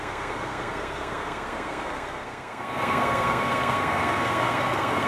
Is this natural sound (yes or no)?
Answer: no